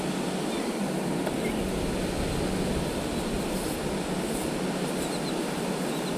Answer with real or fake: real